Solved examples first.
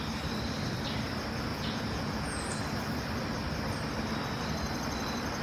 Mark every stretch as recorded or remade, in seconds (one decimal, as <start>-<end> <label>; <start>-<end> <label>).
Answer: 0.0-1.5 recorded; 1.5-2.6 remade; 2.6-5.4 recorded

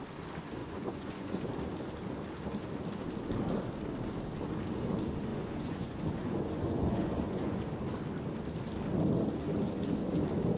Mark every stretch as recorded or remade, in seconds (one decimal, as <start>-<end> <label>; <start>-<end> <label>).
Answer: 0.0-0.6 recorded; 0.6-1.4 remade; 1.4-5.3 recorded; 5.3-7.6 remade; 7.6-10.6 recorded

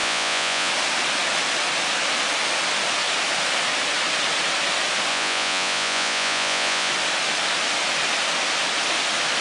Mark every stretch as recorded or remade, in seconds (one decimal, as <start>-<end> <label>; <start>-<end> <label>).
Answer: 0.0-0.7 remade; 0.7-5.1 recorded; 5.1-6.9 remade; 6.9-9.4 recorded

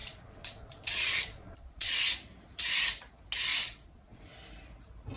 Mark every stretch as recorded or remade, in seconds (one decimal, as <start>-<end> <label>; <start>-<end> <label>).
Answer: 0.0-2.0 remade; 2.0-3.5 recorded; 3.5-4.2 remade; 4.2-5.2 recorded